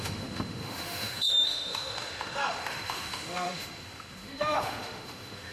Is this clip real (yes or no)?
no